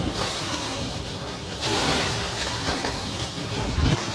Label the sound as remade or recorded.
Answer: remade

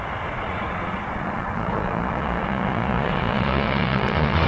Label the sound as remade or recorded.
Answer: remade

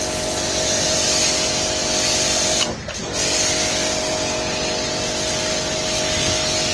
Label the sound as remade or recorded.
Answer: recorded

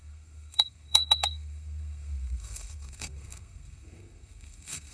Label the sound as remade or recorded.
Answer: remade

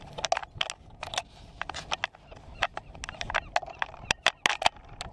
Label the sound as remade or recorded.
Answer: recorded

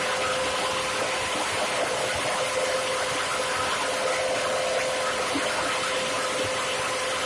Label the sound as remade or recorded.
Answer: recorded